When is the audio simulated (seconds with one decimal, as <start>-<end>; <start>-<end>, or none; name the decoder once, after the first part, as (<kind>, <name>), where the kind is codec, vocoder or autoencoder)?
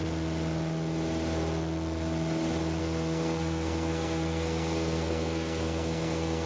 2.8-6.5 (codec, SNAC)